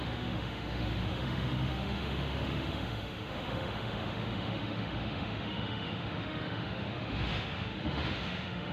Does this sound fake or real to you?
fake